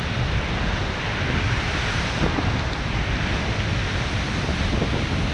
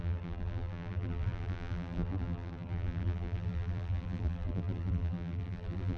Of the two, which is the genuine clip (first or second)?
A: first